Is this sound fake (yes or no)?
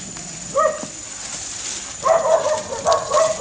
no